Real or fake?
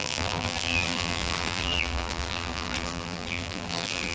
fake